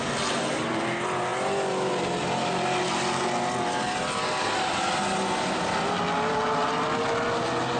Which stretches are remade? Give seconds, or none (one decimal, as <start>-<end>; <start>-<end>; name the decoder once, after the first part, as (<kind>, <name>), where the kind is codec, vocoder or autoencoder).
none